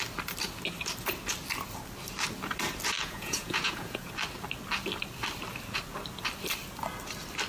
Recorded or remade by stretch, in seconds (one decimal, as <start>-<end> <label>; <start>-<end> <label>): 0.0-3.0 recorded; 3.0-4.1 remade; 4.1-7.5 recorded